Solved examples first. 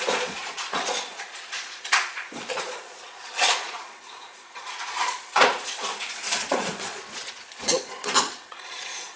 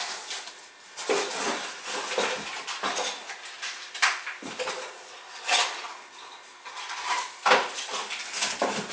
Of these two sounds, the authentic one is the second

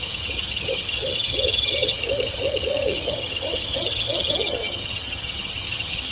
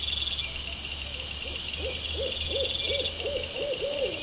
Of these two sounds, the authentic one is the second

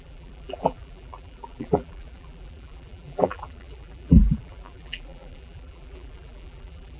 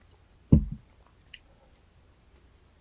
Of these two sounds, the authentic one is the second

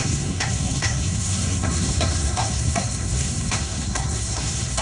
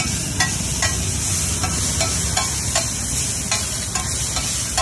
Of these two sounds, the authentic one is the second